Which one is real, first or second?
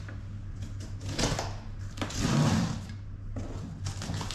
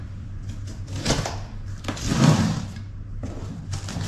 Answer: first